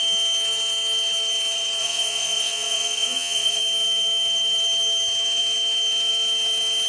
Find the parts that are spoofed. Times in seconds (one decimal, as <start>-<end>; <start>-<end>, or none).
1.8-3.6